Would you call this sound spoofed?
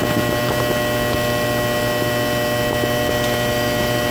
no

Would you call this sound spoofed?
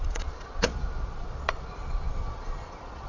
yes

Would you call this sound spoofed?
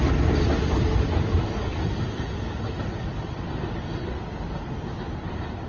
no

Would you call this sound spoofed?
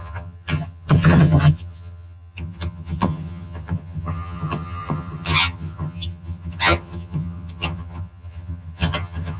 yes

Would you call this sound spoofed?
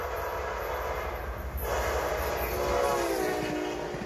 no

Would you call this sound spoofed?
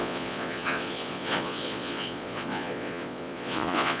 yes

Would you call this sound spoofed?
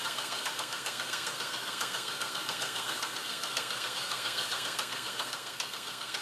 yes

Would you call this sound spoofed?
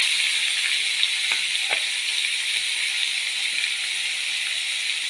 no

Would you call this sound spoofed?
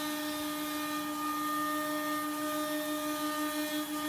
no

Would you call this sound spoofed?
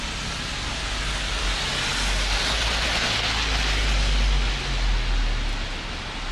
no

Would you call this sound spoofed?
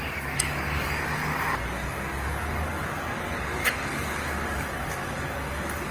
yes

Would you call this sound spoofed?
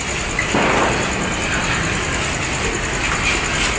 no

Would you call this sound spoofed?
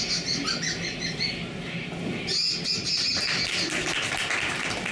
no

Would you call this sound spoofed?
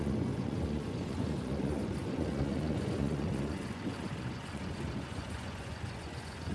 yes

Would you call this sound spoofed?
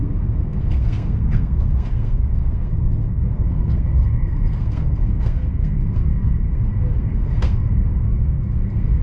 yes